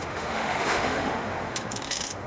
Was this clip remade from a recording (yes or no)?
yes